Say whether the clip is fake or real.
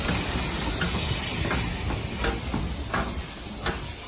real